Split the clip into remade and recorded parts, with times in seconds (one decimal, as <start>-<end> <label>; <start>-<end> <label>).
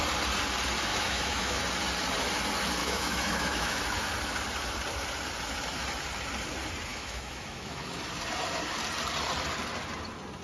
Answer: 0.0-0.9 recorded; 0.9-1.6 remade; 1.6-2.8 recorded; 2.8-3.8 remade; 3.8-6.9 recorded; 6.9-8.1 remade; 8.1-10.4 recorded